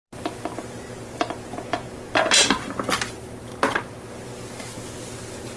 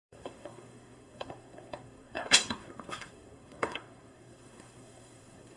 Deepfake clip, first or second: second